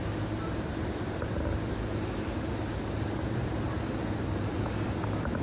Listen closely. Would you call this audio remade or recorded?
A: recorded